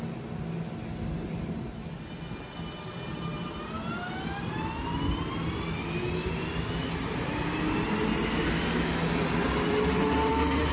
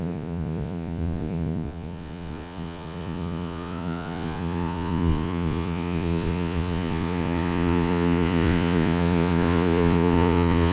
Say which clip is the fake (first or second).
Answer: second